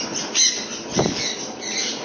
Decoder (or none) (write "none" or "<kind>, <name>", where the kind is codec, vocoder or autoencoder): none